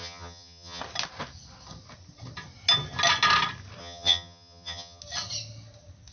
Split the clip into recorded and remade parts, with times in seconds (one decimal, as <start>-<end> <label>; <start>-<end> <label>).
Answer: 0.0-0.8 remade; 0.8-3.8 recorded; 3.8-5.0 remade; 5.0-6.1 recorded